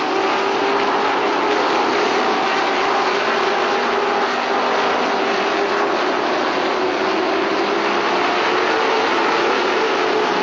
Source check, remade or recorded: recorded